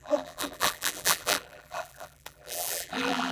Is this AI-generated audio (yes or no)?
yes